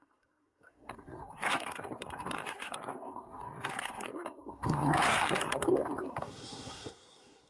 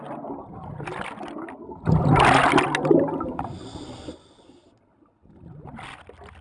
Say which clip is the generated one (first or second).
first